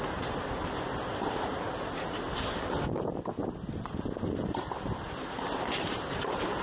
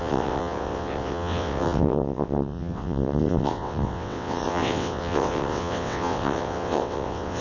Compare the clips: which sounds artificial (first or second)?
second